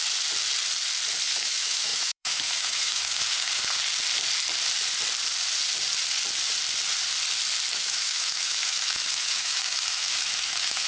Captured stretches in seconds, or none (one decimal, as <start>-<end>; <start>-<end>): 0.0-1.4; 3.6-7.7